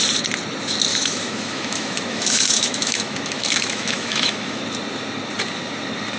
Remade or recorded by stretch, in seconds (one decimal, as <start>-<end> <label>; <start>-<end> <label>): 0.0-0.9 recorded; 0.9-4.6 remade; 4.6-6.2 recorded